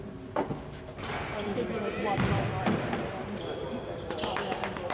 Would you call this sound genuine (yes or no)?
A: yes